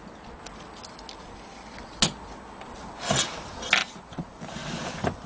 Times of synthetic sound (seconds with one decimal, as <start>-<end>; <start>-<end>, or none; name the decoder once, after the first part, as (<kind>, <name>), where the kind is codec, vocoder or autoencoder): 3.8-4.5 (vocoder, BigVGAN v2)